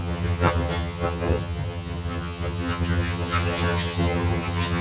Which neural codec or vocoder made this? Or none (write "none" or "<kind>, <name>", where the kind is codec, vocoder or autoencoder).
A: vocoder, HiFi-GAN